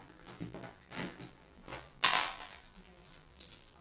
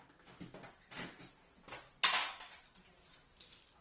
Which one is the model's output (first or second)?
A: first